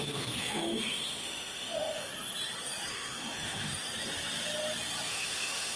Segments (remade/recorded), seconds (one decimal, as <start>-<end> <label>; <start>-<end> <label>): 0.0-2.1 remade; 2.1-2.9 recorded; 2.9-3.7 remade; 3.7-5.1 recorded; 5.1-5.8 remade